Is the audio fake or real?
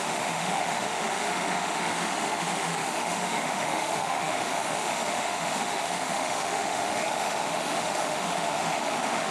fake